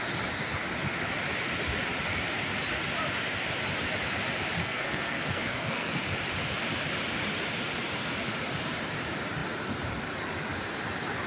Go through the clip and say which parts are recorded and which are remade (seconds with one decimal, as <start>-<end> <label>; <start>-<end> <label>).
0.0-4.6 recorded; 4.6-6.0 remade; 6.0-11.3 recorded